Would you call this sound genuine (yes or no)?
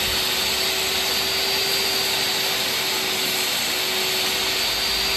yes